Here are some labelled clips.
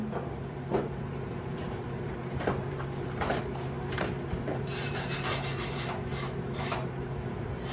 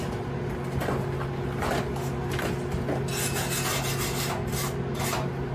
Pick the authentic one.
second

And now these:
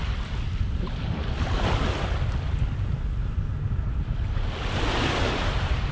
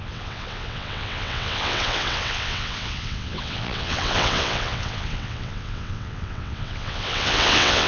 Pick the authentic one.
first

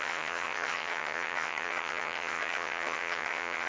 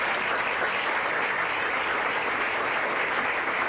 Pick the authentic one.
second